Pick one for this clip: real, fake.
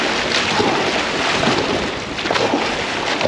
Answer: real